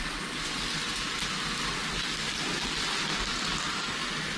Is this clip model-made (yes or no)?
no